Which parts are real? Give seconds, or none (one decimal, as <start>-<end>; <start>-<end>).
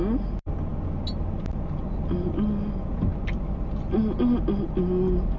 0.0-5.4